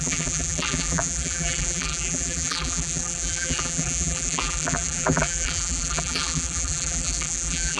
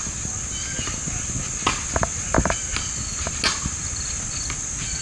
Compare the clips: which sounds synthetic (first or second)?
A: first